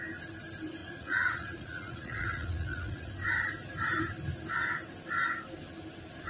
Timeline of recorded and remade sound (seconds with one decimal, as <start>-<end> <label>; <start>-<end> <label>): 0.0-0.8 recorded; 0.8-3.1 remade; 3.1-6.3 recorded